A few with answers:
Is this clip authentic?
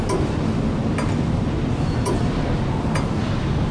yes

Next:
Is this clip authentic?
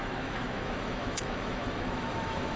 no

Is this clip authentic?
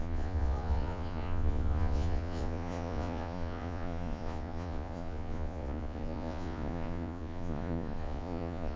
no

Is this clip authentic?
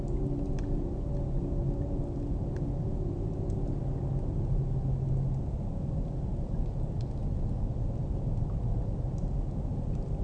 yes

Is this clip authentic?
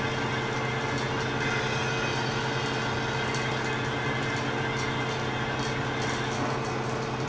yes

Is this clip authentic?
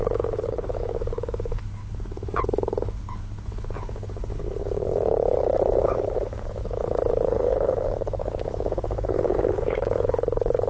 no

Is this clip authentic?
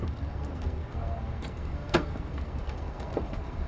no